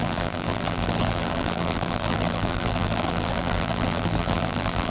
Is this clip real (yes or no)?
no